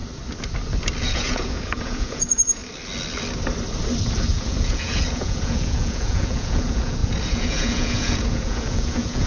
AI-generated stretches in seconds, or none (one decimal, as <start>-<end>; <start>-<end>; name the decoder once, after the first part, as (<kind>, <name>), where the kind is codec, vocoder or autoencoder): 1.0-2.6 (vocoder, Vocos); 4.3-9.3